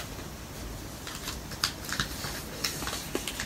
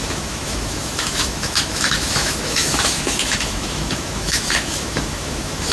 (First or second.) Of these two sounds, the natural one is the first